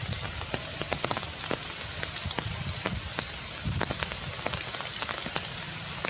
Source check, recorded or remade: recorded